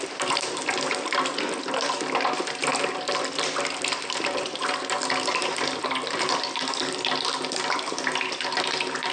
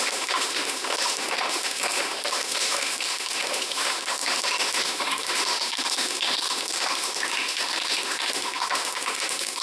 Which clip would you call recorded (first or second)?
first